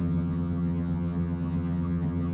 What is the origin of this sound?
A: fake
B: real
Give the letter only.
A